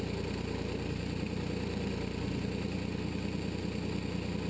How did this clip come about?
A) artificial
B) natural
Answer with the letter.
B